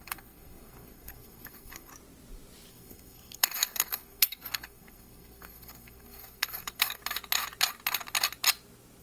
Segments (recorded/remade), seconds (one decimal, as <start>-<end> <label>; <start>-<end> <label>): 0.0-1.9 remade; 1.9-2.7 recorded; 2.7-7.0 remade; 7.0-9.0 recorded